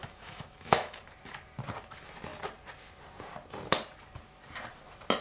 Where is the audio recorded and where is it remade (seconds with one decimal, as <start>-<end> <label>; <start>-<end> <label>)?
0.0-1.0 remade; 1.0-5.2 recorded